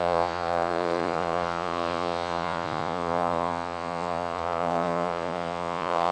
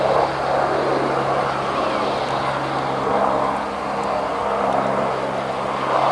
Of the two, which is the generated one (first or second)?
first